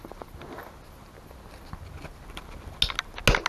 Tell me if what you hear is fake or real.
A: real